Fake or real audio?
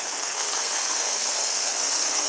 fake